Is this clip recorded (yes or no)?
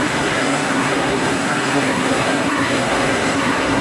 no